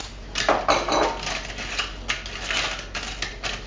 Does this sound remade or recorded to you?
recorded